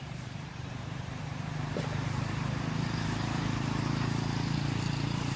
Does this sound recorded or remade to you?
remade